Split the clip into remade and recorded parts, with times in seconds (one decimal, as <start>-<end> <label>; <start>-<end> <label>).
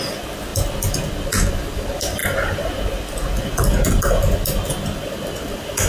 0.0-0.5 remade; 0.5-1.5 recorded; 1.5-2.2 remade; 2.2-4.8 recorded; 4.8-5.9 remade